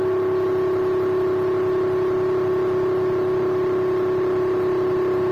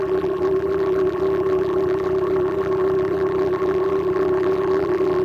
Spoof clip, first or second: second